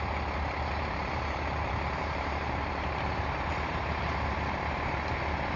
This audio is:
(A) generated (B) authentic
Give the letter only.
B